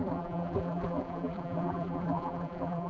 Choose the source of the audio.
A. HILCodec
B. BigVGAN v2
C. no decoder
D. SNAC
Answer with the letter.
B